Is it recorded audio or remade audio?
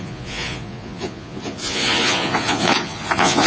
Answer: remade